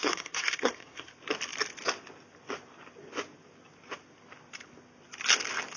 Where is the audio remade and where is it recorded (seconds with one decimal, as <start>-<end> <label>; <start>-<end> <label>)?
0.0-1.1 remade; 1.1-5.8 recorded